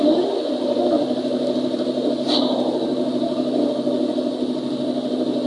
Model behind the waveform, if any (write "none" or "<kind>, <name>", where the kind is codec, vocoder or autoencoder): vocoder, BigVGAN v2